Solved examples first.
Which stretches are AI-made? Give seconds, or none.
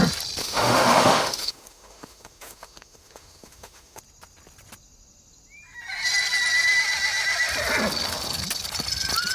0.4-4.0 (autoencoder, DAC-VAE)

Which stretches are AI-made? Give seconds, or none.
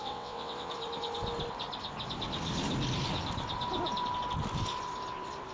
0.0-0.7 (vocoder, WaveNeXt)